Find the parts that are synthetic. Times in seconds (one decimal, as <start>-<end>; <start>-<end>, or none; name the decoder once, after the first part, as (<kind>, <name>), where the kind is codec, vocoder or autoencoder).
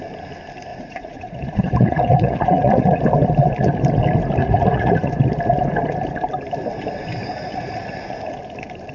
0.7-3.0 (vocoder, Vocos); 4.4-5.1; 7.5-8.4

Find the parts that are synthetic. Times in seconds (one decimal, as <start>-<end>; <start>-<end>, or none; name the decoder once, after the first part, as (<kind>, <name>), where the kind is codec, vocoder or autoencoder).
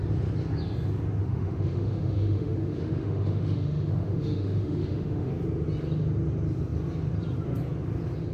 1.2-5.3 (autoencoder, DAC-VAE)